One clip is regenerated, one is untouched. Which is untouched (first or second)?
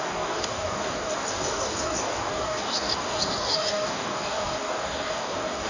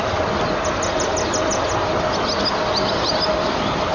second